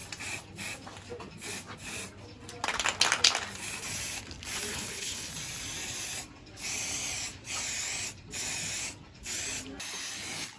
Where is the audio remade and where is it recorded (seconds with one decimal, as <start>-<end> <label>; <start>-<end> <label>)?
0.0-4.7 recorded; 4.7-5.3 remade; 5.3-10.6 recorded